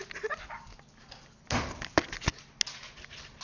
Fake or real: real